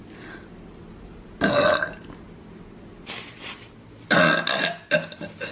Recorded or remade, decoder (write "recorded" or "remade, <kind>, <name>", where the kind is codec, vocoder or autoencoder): recorded